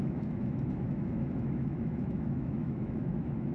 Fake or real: fake